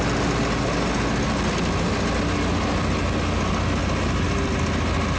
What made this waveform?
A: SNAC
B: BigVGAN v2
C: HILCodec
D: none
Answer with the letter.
D